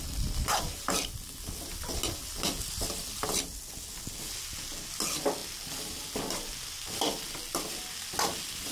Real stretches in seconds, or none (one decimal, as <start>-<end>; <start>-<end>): 0.0-8.7